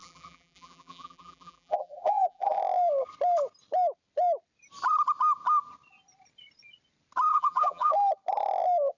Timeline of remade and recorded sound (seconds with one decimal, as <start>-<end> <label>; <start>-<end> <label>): 0.0-2.6 remade; 2.6-7.3 recorded; 7.3-7.9 remade; 7.9-9.0 recorded